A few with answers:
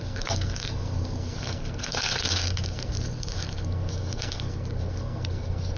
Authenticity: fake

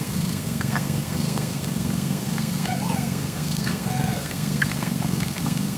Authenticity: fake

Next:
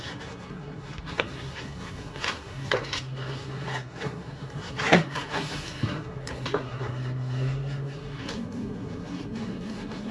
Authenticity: fake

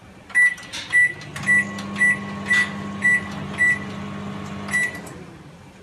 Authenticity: real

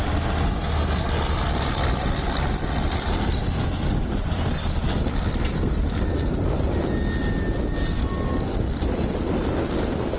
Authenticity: real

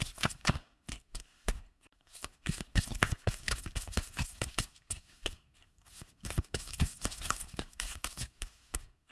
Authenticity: fake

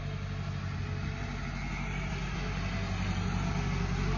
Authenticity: real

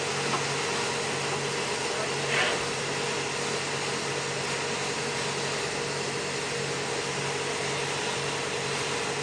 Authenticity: real